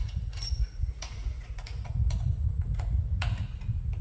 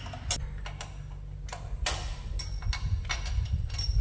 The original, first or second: second